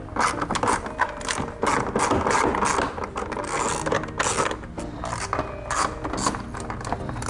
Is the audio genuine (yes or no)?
yes